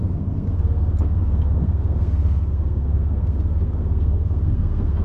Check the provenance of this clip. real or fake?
fake